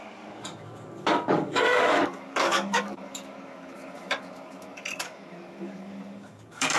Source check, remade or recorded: remade